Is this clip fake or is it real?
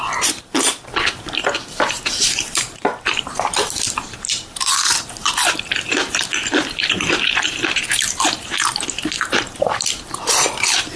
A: fake